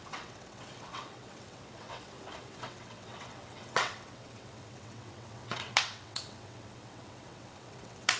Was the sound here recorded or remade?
remade